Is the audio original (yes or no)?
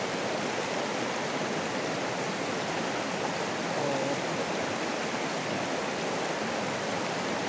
yes